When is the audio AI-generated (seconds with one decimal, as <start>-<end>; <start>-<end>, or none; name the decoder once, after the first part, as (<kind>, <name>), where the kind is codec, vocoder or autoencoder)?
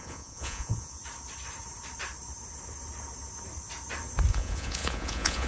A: 0.0-1.0 (vocoder, Vocos); 4.3-5.5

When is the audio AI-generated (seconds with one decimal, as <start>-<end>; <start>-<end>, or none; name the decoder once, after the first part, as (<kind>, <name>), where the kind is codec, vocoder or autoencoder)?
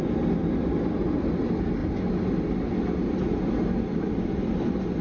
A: none